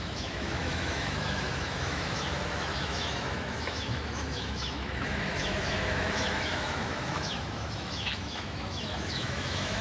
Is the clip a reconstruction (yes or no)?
yes